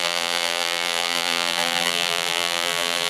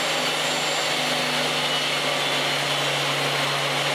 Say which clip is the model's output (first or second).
first